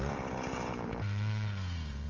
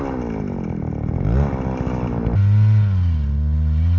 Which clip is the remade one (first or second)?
first